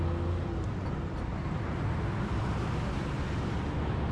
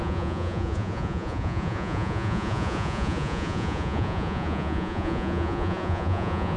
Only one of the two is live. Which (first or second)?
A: first